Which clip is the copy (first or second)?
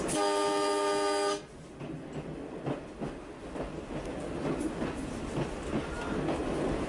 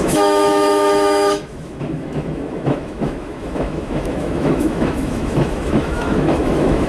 second